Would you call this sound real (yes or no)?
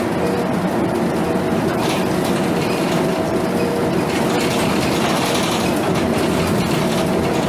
yes